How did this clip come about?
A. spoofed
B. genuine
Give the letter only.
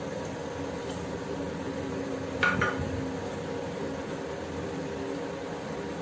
B